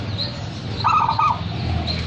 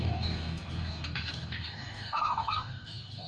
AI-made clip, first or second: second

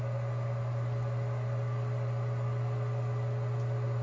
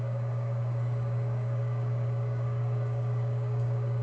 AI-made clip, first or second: second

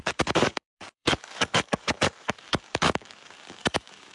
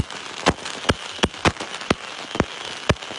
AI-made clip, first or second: first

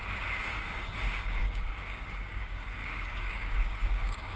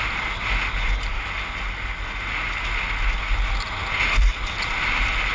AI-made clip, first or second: first